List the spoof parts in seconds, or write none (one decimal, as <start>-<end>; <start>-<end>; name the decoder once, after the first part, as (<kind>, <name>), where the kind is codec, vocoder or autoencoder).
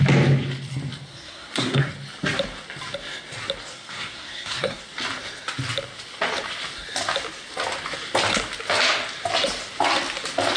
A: 1.1-1.9 (codec, SNAC); 3.7-4.8